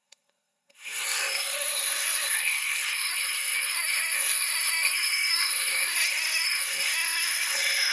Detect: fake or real fake